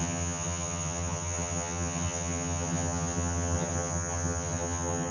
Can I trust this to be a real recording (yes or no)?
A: no